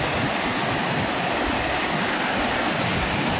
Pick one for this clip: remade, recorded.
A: recorded